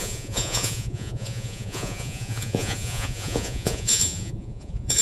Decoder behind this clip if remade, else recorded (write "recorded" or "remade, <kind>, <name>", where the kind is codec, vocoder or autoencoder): remade, vocoder, Vocos